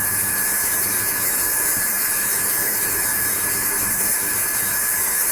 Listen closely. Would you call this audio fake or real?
fake